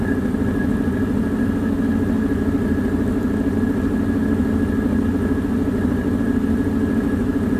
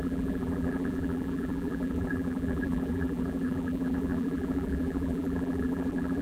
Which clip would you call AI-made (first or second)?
second